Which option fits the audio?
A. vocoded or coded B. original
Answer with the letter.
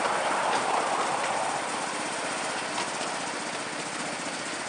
B